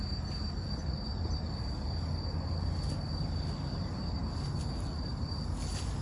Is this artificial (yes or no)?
no